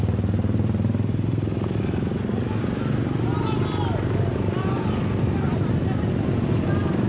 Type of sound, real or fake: real